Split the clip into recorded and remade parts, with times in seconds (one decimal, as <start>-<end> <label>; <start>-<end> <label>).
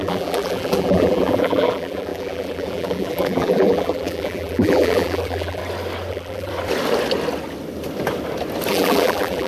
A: 0.0-5.6 remade; 5.6-6.1 recorded; 6.1-6.5 remade; 6.5-8.7 recorded; 8.7-9.5 remade